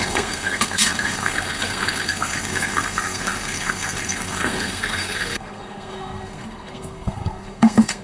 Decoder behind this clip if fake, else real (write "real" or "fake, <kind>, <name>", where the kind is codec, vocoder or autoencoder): fake, codec, SNAC